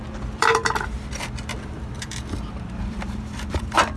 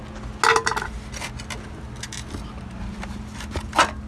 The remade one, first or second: first